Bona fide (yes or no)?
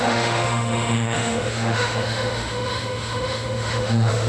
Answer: no